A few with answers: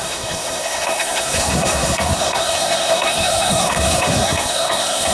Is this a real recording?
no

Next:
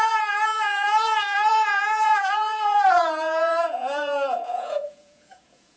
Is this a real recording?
no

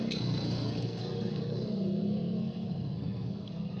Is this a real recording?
no